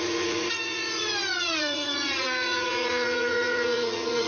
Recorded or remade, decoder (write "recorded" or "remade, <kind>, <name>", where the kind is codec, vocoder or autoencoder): remade, vocoder, Vocos